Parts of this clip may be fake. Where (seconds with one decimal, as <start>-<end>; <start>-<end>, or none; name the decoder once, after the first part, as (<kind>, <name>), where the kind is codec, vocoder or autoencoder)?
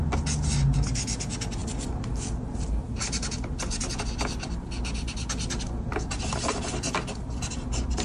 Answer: none